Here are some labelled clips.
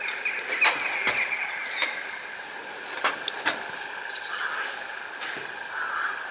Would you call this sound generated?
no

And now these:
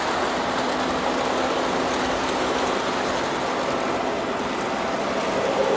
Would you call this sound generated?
no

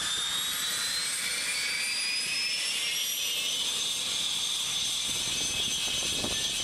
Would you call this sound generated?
no